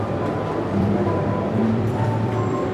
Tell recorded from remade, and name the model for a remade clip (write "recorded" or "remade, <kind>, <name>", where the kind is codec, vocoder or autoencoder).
remade, vocoder, BigVGAN v2